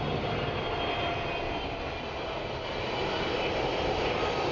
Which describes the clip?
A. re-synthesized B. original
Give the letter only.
B